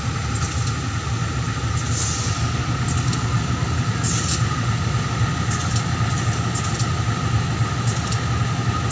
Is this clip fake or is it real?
real